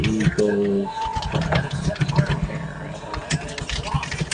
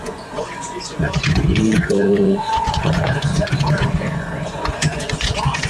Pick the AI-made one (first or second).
second